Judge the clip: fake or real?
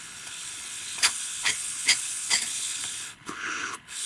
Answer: fake